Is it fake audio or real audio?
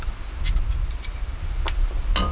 real